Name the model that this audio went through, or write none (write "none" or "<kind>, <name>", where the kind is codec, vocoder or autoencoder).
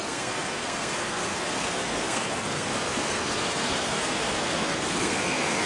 codec, SNAC